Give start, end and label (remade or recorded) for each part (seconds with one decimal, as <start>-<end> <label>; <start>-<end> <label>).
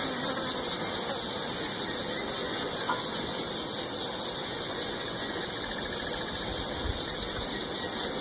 0.0-2.4 recorded; 2.4-3.5 remade; 3.5-4.4 recorded; 4.4-5.5 remade; 5.5-8.2 recorded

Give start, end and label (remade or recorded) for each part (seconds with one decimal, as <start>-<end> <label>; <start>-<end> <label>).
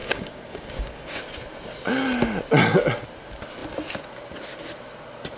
0.0-1.2 remade; 1.2-5.4 recorded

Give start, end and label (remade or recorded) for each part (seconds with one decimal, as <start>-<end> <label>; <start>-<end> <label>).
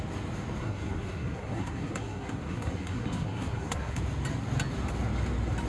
0.0-0.6 recorded; 0.6-4.0 remade; 4.0-5.7 recorded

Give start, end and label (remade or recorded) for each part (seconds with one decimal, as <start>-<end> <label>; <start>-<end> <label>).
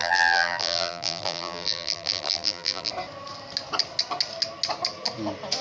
0.0-2.9 remade; 2.9-5.6 recorded